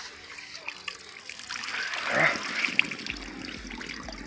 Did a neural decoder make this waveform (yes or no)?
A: no